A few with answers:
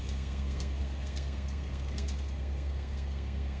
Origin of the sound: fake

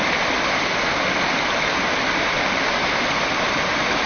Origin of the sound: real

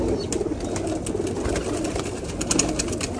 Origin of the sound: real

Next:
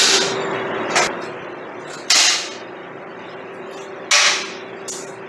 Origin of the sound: real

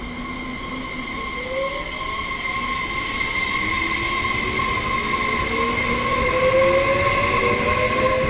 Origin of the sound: real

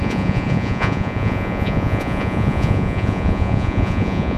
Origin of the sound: fake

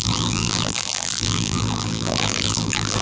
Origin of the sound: fake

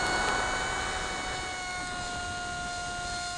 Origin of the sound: real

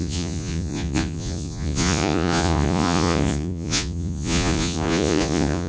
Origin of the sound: fake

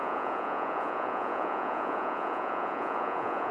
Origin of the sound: fake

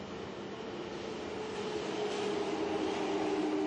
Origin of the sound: real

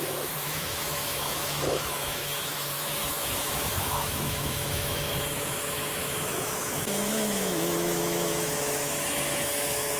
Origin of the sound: fake